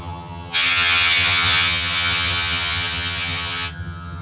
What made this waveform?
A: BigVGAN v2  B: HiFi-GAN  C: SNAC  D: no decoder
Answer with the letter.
B